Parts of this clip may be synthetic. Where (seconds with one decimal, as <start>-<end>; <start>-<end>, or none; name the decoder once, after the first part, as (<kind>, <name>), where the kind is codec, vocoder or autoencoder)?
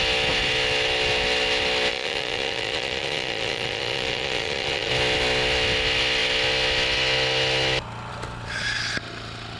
1.9-4.9 (vocoder, Vocos)